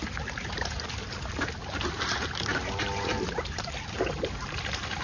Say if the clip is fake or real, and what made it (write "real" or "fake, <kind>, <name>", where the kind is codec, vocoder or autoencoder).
real